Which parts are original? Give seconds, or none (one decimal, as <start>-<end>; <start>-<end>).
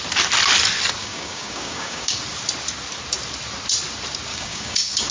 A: 0.0-1.0; 2.2-4.3